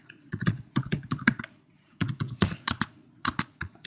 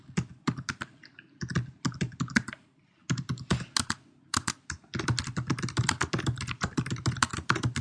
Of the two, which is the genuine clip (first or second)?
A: second